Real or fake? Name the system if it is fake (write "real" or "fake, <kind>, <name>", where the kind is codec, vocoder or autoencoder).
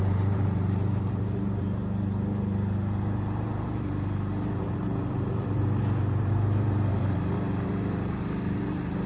fake, vocoder, BigVGAN v2